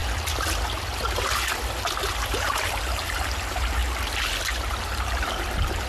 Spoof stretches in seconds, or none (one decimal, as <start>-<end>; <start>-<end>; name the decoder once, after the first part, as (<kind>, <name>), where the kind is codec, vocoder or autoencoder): 2.1-3.8 (vocoder, BigVGAN v2); 4.8-5.9